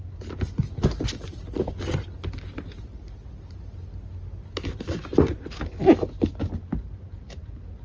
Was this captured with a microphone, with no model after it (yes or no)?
yes